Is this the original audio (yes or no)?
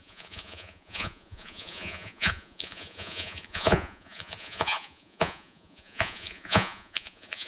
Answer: no